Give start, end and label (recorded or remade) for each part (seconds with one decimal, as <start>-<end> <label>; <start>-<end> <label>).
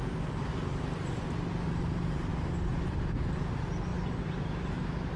0.0-5.2 recorded